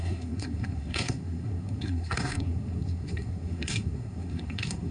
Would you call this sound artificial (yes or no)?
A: yes